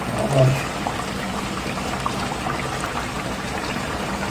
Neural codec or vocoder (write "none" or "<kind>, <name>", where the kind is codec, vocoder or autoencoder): vocoder, BigVGAN v2